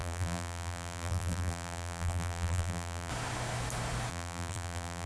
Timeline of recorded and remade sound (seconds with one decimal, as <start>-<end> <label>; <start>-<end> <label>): 0.0-3.1 remade; 3.1-4.1 recorded; 4.1-5.1 remade